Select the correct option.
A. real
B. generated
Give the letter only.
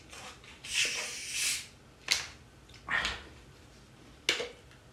A